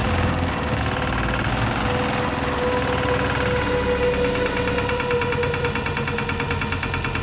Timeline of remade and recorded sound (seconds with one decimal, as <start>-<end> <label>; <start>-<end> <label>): 0.0-0.8 remade; 0.8-7.2 recorded